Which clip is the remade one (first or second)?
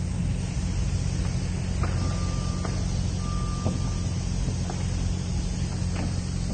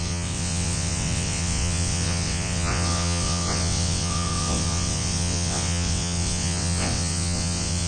second